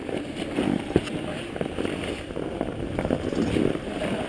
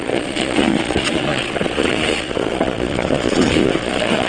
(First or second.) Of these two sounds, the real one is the first